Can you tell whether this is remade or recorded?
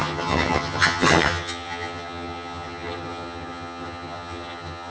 remade